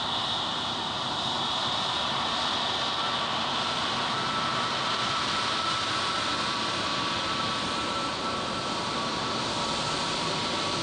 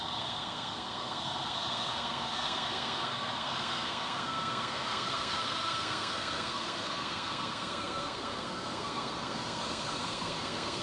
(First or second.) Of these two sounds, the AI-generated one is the second